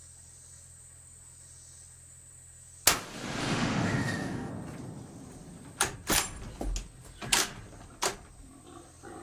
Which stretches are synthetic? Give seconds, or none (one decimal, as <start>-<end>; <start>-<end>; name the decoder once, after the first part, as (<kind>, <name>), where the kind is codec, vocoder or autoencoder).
3.4-4.5 (autoencoder, DAC-VAE)